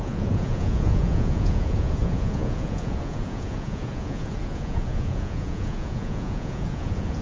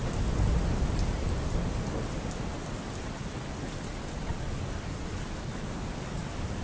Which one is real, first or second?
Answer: second